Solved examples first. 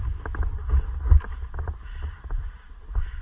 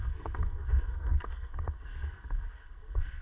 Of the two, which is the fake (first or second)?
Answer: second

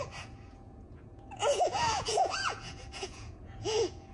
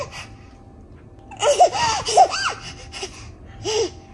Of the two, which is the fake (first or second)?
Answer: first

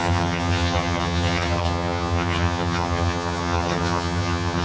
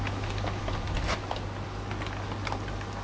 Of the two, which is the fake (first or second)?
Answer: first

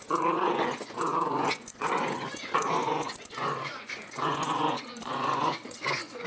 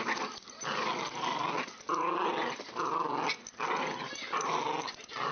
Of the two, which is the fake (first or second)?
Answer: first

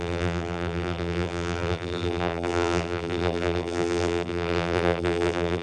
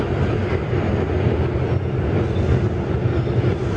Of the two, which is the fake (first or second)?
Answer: first